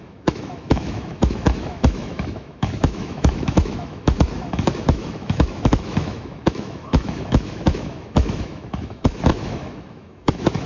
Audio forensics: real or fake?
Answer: fake